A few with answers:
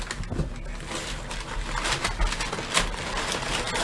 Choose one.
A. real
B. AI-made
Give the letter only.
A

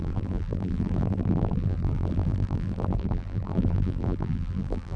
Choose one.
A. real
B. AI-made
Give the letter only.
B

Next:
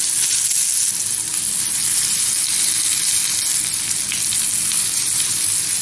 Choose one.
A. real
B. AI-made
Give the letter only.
A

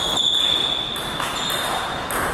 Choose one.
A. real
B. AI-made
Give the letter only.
A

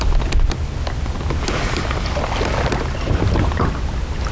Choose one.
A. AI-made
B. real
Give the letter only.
B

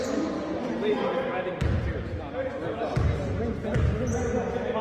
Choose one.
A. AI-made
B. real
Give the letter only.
B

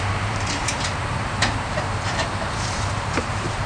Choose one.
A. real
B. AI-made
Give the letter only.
B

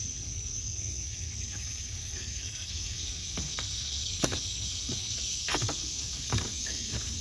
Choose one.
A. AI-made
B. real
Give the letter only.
A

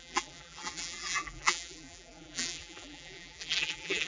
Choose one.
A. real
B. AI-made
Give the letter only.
B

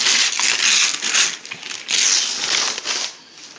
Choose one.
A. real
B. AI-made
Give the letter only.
A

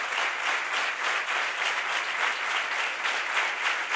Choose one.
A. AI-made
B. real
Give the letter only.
B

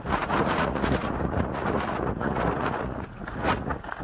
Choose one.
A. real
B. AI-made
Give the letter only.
B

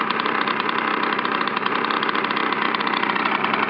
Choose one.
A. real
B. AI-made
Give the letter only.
B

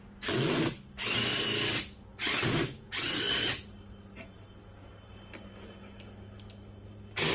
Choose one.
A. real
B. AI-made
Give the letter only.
A